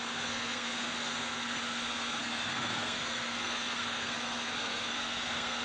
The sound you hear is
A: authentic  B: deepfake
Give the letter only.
B